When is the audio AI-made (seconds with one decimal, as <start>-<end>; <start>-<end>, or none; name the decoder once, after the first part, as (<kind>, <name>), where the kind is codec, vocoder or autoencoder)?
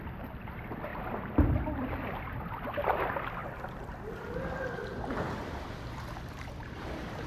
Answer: 0.0-0.9 (vocoder, BigVGAN v2); 1.5-7.3